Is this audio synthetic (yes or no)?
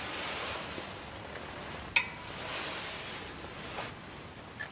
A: no